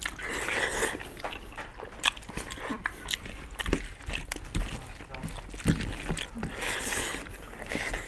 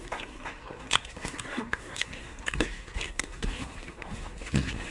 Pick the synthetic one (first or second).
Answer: second